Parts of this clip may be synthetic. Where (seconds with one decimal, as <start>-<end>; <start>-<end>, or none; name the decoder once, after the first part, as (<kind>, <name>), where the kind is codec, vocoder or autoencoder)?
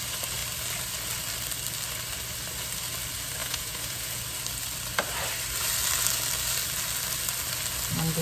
3.4-4.2 (vocoder, Vocos)